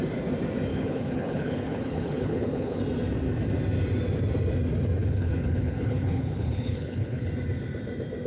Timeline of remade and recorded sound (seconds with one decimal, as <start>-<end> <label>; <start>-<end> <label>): 0.0-0.7 recorded; 0.7-2.8 remade; 2.8-5.0 recorded; 5.0-7.3 remade; 7.3-8.3 recorded